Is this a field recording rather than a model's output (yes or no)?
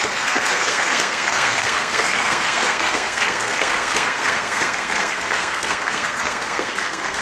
no